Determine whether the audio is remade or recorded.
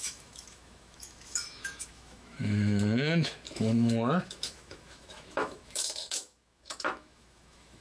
remade